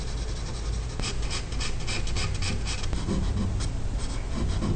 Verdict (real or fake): real